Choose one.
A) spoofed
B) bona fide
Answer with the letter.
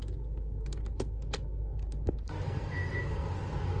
A